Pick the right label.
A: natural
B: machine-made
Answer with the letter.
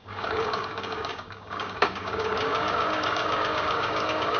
B